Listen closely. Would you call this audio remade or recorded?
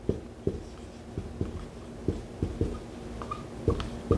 recorded